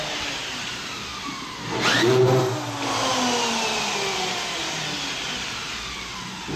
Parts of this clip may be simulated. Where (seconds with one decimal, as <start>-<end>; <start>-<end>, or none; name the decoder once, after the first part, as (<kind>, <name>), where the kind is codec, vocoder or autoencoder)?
0.0-1.1 (vocoder, BigVGAN v2); 5.1-6.6